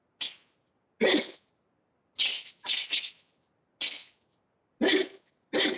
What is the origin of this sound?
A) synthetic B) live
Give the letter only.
B